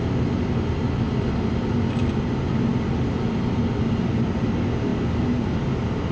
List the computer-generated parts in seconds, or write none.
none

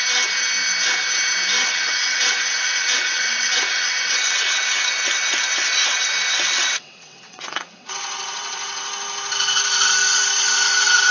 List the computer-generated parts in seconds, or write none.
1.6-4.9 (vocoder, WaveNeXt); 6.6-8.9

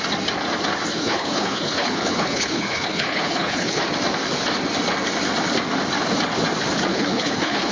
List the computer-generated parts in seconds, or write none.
0.9-3.8 (codec, HILCodec); 6.9-7.7

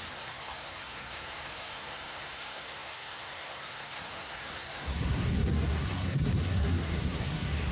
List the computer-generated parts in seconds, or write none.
0.0-7.7 (codec, SNAC)

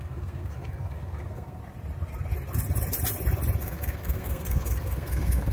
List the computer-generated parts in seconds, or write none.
0.0-1.6 (codec, SNAC); 3.6-5.5

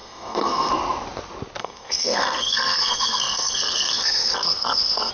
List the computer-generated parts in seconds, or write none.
0.0-0.7 (codec, SNAC); 1.6-5.1

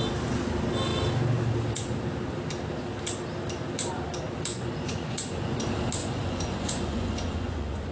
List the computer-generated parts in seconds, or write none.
4.5-5.6 (vocoder, Vocos); 6.0-7.9